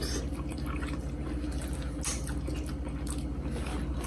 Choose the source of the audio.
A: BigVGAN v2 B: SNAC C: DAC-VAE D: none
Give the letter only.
D